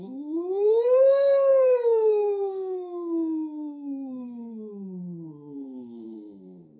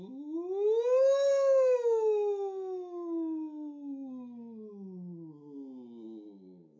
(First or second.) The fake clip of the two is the first